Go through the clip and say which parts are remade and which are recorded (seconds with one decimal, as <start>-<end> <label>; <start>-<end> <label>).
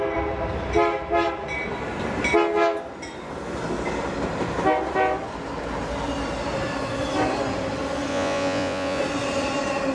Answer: 0.0-8.1 recorded; 8.1-9.0 remade; 9.0-9.9 recorded